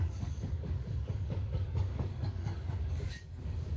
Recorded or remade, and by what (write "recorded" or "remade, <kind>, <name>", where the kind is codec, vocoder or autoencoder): remade, codec, DAC